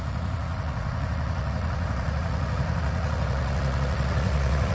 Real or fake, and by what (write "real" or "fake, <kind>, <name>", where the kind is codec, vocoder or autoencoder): fake, vocoder, Vocos